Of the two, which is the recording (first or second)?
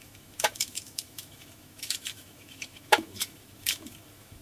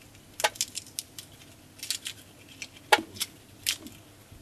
second